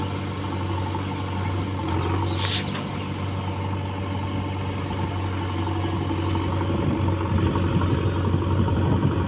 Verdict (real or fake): real